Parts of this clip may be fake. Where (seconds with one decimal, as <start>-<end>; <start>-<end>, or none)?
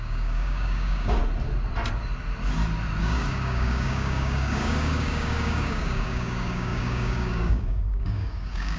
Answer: 0.0-1.2; 3.0-8.8